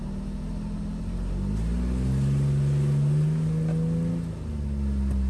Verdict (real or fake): real